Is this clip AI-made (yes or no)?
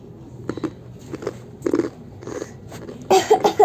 no